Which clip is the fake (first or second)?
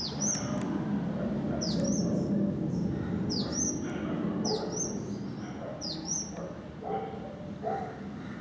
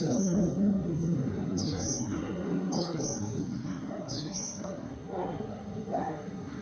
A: second